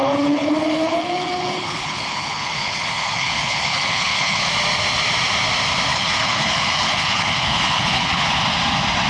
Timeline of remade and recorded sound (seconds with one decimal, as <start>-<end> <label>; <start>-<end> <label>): 0.0-4.5 remade; 4.5-5.9 recorded; 5.9-8.4 remade; 8.4-9.1 recorded